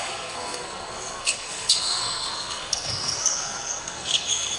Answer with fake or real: fake